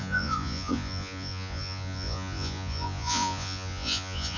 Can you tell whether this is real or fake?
fake